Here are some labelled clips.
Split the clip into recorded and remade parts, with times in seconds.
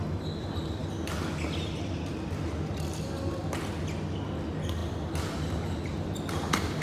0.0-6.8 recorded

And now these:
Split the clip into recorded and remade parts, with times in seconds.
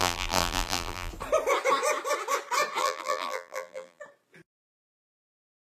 0.0-1.1 remade; 1.1-2.8 recorded; 2.8-4.0 remade; 4.0-5.6 recorded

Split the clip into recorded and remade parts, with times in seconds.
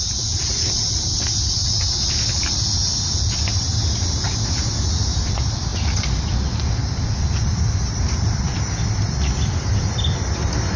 0.0-1.6 remade; 1.6-4.9 recorded; 4.9-5.7 remade; 5.7-6.7 recorded; 6.7-10.8 remade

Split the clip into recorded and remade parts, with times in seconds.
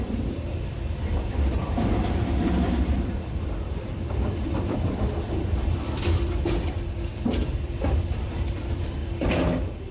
0.0-9.0 remade; 9.0-9.9 recorded